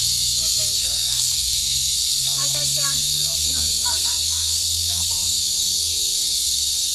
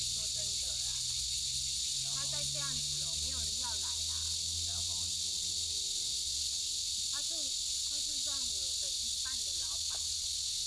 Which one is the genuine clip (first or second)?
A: second